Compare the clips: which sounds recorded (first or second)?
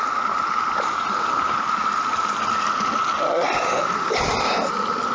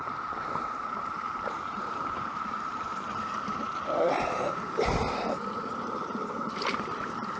first